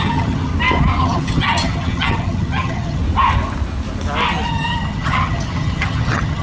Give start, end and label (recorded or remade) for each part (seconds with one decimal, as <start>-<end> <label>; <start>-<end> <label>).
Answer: 0.0-0.5 remade; 0.5-1.0 recorded; 1.0-3.0 remade; 3.0-4.5 recorded; 4.5-6.4 remade